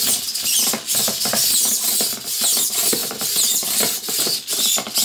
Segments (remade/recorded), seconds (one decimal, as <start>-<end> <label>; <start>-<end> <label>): 0.0-5.0 recorded